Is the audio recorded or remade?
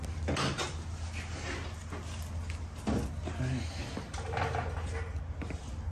recorded